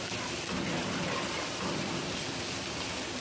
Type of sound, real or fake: real